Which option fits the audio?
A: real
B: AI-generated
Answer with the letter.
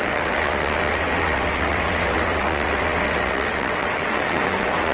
B